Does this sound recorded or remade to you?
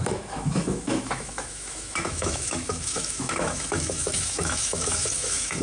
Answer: remade